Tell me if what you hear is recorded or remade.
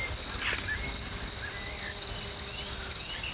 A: recorded